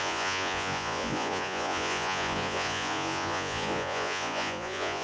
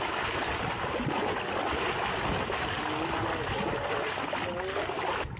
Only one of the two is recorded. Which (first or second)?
second